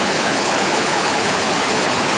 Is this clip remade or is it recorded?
remade